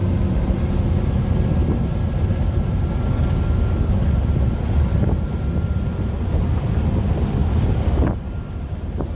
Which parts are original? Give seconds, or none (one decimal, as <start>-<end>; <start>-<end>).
0.0-9.1